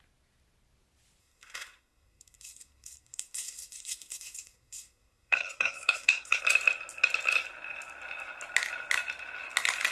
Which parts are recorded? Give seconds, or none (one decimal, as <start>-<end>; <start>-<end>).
0.0-1.2; 6.4-9.9